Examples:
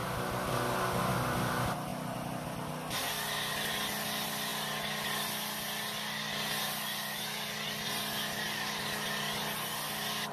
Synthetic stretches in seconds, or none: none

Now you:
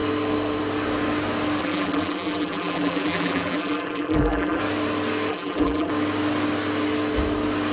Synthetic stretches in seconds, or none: 1.6-4.6; 5.3-5.9

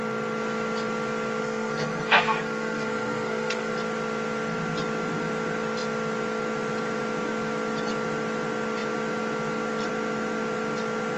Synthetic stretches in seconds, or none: 1.4-3.7

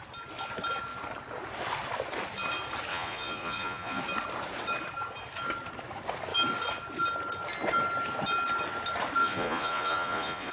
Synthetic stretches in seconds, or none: 2.9-4.0; 9.2-10.5

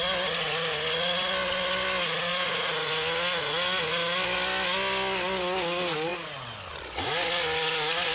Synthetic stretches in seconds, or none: none

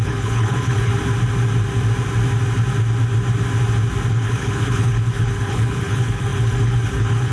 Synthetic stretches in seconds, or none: 0.0-0.9; 4.1-7.3